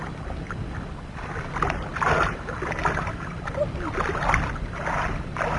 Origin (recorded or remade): recorded